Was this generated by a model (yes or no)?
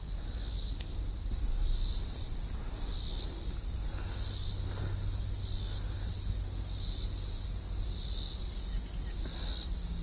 no